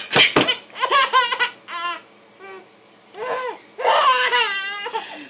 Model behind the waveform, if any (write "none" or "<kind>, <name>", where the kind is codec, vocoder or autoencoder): none